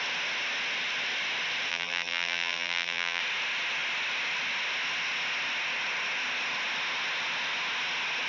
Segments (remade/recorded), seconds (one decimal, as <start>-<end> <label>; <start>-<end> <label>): 0.0-1.7 recorded; 1.7-3.2 remade; 3.2-8.3 recorded